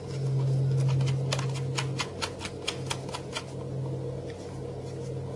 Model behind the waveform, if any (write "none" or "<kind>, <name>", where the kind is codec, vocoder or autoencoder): none